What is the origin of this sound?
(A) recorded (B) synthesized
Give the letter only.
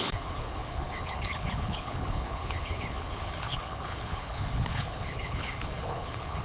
B